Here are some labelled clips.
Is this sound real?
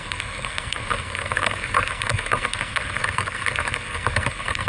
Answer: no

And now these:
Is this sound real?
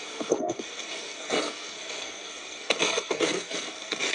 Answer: no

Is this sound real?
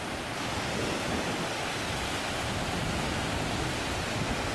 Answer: yes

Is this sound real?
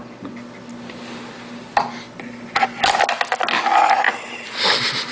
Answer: yes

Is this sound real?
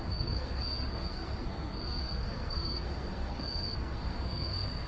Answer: no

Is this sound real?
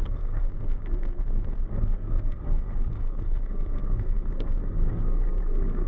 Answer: no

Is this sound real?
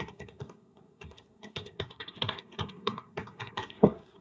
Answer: no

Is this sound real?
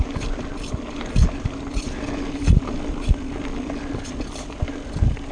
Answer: yes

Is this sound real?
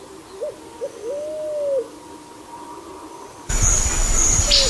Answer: yes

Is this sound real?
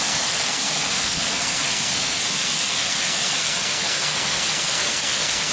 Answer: no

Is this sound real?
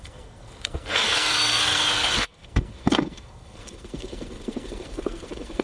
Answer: no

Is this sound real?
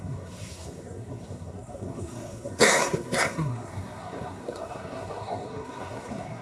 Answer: no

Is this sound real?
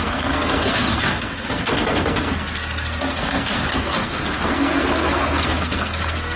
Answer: no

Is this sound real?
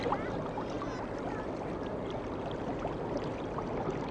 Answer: yes